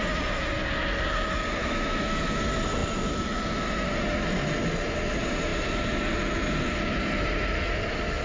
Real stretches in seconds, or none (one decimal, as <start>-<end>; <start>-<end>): 0.0-1.6; 2.4-8.2